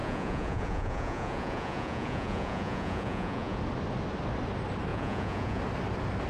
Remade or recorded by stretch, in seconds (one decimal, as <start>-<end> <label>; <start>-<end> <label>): 0.0-3.6 remade; 3.6-4.9 recorded; 4.9-5.6 remade; 5.6-6.3 recorded